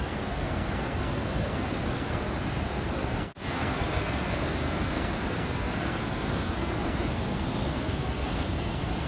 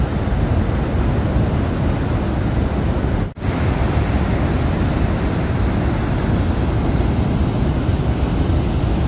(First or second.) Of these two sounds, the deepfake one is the first